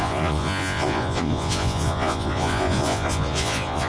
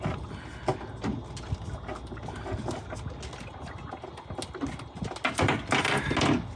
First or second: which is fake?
first